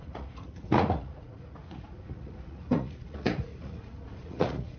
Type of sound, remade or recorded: remade